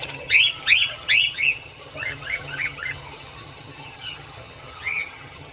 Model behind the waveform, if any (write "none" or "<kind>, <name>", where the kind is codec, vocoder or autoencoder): vocoder, HiFi-GAN